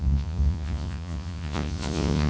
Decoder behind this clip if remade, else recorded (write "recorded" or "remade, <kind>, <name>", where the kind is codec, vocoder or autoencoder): remade, vocoder, Vocos